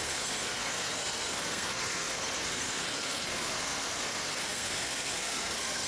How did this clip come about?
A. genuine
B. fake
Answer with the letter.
B